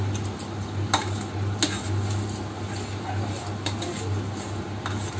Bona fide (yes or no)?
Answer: yes